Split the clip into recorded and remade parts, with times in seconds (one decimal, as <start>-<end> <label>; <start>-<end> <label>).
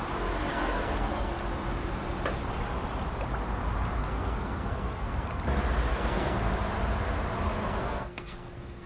0.0-0.5 recorded; 0.5-1.3 remade; 1.3-4.0 recorded; 4.0-5.4 remade; 5.4-5.9 recorded; 5.9-6.5 remade; 6.5-7.6 recorded; 7.6-8.9 remade